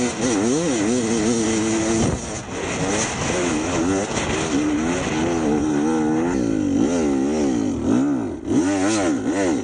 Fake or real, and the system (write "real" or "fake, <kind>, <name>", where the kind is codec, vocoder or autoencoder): real